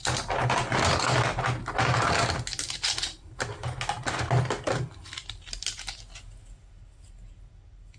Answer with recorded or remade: recorded